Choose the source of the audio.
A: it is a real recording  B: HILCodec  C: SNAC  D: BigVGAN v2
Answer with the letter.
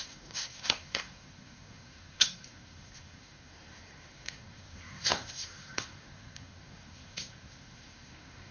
C